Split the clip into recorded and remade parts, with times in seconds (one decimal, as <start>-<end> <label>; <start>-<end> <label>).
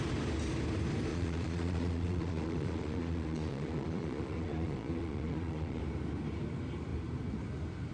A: 0.0-1.1 recorded; 1.1-5.8 remade; 5.8-7.9 recorded